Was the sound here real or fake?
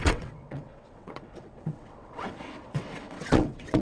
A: fake